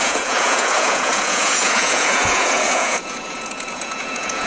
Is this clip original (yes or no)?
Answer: no